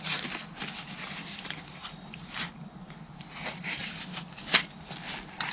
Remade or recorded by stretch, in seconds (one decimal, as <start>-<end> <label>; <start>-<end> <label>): 0.0-1.3 recorded; 1.3-4.3 remade; 4.3-5.5 recorded